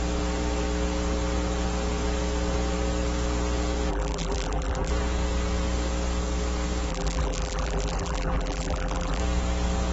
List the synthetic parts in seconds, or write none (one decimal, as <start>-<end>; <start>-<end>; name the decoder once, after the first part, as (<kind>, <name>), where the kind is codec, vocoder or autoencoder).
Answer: 3.9-4.9 (vocoder, BigVGAN v2); 6.9-9.2